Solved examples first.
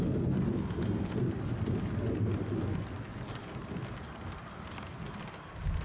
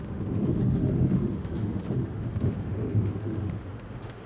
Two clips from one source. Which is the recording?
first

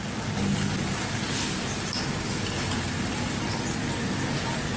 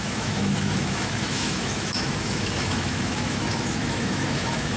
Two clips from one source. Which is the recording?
first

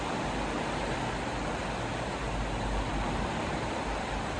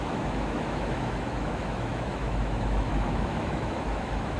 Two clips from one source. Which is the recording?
first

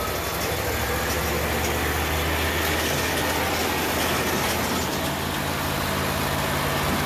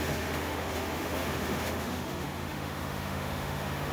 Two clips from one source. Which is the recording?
first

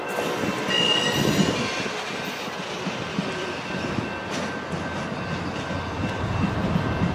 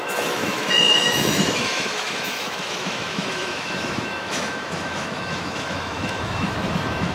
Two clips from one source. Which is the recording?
first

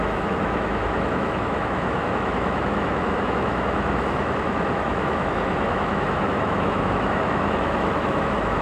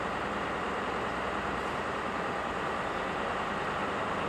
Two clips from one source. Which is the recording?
second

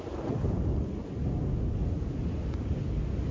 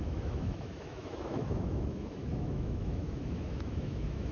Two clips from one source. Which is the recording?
first